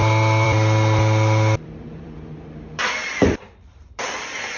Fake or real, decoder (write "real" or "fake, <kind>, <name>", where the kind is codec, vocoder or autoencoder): fake, vocoder, BigVGAN v2